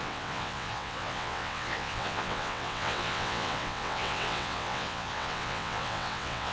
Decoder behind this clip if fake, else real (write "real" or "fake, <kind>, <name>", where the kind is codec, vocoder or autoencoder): fake, vocoder, WaveNeXt